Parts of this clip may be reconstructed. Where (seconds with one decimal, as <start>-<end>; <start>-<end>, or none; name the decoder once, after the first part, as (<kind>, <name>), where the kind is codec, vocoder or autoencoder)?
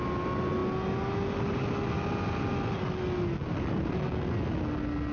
none